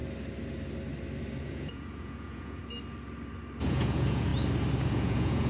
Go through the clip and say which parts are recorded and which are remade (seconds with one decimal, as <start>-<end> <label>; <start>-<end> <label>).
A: 0.0-1.4 recorded; 1.4-2.6 remade; 2.6-3.7 recorded; 3.7-4.3 remade; 4.3-4.8 recorded; 4.8-5.5 remade